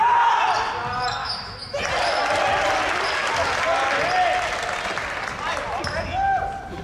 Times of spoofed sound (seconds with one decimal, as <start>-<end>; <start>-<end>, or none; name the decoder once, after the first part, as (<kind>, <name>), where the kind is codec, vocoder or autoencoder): 1.2-1.8 (autoencoder, DAC-VAE)